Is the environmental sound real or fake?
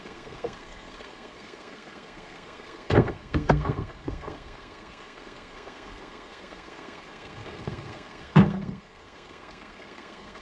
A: fake